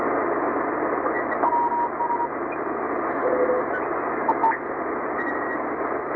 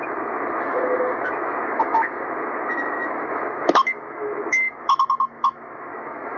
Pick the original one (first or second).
first